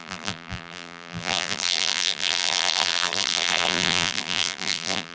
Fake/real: fake